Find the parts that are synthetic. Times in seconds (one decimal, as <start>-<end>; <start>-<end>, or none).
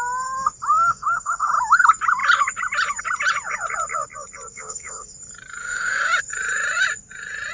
0.7-1.5; 4.5-5.1; 5.6-6.2